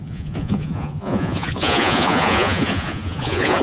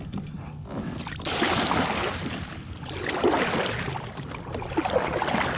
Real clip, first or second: second